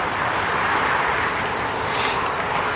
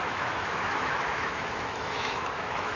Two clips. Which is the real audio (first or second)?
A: first